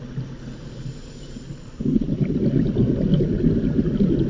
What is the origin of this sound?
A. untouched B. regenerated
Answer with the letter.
A